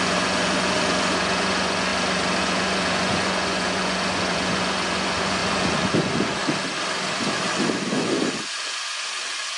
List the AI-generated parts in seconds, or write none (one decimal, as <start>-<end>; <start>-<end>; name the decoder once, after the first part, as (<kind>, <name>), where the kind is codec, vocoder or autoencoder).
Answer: 0.0-1.9 (vocoder, Vocos); 2.4-6.4; 7.9-9.6